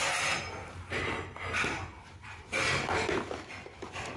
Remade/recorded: recorded